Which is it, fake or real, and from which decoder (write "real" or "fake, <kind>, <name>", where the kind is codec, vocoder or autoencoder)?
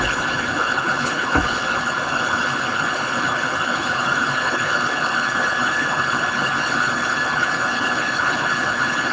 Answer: fake, codec, HILCodec